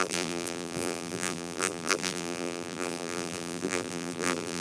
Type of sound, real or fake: fake